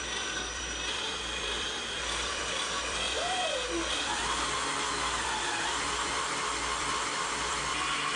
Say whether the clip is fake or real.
fake